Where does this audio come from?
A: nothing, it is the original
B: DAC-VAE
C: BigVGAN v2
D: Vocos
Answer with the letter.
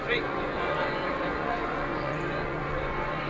D